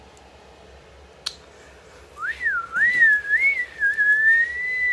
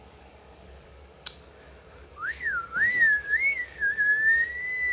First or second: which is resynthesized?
second